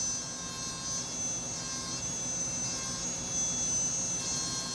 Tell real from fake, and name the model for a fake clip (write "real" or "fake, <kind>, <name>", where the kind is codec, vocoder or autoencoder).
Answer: real